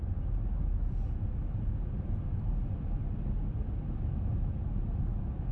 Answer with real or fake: real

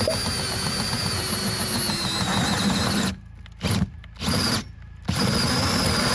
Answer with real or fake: real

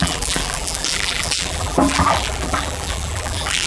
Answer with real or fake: fake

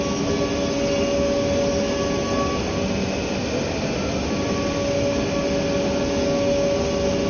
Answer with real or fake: real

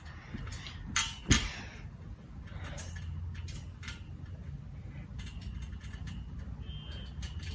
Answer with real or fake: real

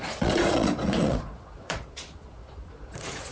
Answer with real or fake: fake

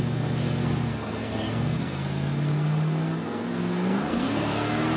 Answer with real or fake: fake